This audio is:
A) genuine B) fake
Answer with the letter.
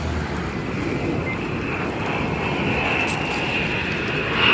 A